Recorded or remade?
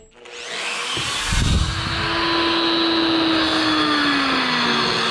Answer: recorded